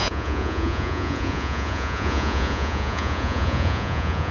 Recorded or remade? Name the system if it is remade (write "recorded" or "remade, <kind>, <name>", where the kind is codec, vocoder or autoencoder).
remade, vocoder, Vocos